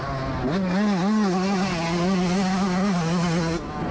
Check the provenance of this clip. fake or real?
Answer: real